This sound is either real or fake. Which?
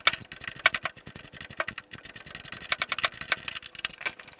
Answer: real